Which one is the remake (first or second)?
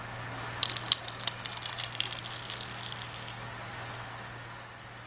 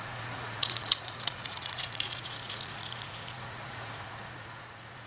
second